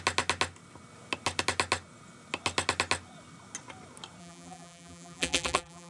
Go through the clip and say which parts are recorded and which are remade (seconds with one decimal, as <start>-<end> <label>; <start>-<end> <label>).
0.0-4.2 recorded; 4.2-5.9 remade